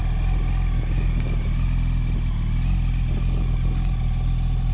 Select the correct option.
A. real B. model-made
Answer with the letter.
A